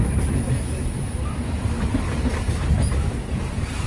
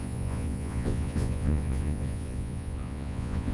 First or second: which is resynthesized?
second